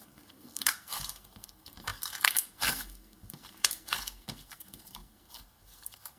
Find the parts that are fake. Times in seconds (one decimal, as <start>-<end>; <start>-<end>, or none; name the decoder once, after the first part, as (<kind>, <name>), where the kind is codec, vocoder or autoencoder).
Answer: 0.0-6.2 (codec, SNAC)